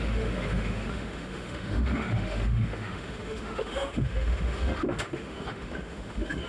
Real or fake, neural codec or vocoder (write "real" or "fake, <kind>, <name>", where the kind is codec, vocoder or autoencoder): fake, autoencoder, DAC-VAE